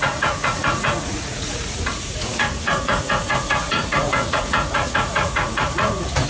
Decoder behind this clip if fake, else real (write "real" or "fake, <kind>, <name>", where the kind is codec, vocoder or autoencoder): fake, vocoder, Vocos